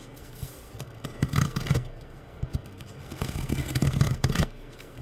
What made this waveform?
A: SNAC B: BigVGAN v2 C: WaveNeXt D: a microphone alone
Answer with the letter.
A